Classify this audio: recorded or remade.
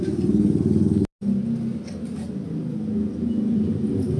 recorded